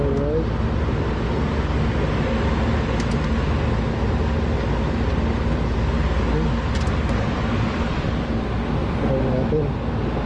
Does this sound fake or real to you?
real